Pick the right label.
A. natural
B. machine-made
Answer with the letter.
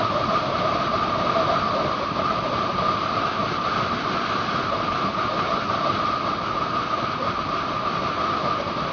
A